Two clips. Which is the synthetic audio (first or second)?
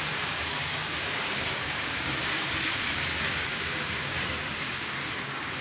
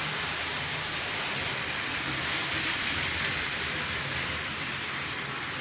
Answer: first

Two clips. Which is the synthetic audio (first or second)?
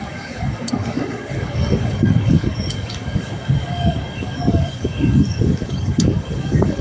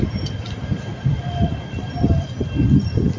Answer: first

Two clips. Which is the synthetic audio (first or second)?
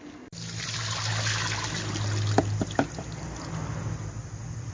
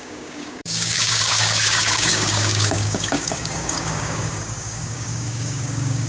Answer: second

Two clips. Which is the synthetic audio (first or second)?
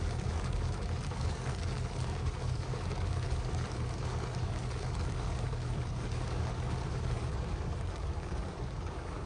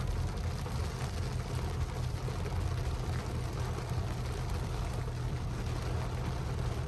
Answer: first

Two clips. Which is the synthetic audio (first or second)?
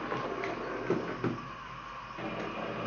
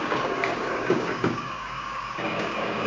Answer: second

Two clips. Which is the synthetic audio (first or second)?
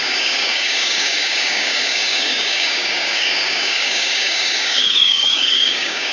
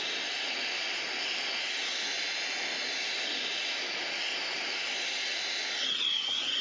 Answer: first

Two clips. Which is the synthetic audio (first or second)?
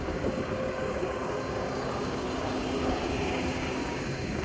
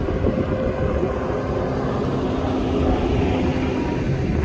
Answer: first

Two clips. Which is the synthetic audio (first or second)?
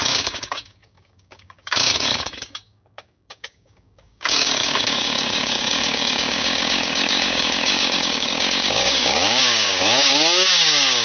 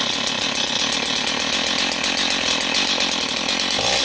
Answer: first